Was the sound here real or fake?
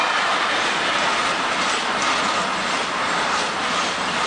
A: real